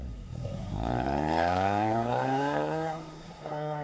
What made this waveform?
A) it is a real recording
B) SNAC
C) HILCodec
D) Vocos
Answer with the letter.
B